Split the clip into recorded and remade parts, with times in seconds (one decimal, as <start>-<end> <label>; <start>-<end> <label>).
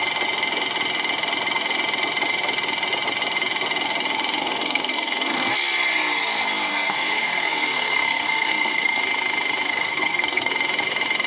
0.0-4.4 recorded; 4.4-5.5 remade; 5.5-6.7 recorded; 6.7-9.0 remade; 9.0-9.7 recorded; 9.7-10.5 remade; 10.5-11.3 recorded